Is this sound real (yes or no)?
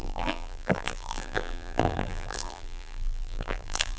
no